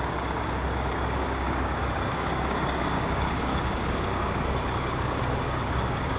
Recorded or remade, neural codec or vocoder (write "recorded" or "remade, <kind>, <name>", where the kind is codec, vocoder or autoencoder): remade, codec, DAC